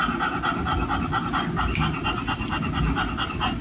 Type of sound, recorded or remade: recorded